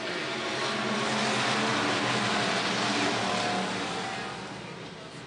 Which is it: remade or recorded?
recorded